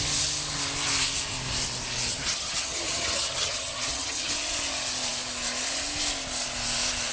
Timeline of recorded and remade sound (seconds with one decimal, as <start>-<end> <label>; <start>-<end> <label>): 0.0-2.1 recorded; 2.1-4.3 remade; 4.3-7.1 recorded